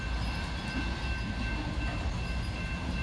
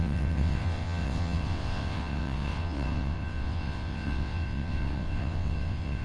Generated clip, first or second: second